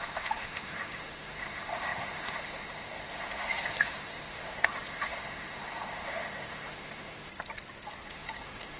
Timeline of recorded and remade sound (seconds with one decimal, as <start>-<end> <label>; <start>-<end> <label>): 0.0-7.3 remade; 7.3-8.1 recorded; 8.1-8.8 remade